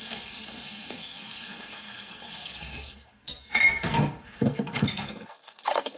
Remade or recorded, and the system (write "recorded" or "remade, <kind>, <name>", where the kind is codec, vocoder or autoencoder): remade, codec, SNAC